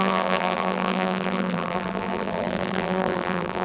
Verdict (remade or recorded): remade